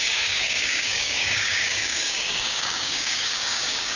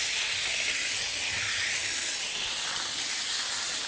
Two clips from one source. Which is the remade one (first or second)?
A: first